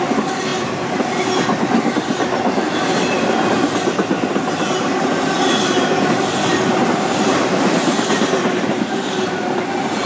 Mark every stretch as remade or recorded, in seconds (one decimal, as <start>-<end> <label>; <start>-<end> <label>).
0.0-10.1 recorded